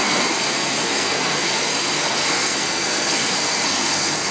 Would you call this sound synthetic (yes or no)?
yes